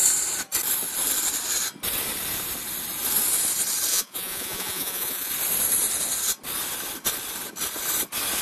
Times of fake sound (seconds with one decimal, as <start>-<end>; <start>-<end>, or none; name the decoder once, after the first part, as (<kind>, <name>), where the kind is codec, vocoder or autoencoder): 3.9-5.3 (vocoder, Vocos)